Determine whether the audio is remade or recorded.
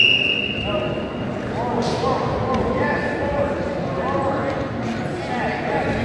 recorded